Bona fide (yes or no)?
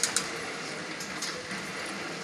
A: yes